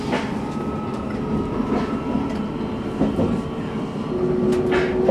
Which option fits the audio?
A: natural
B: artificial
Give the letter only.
A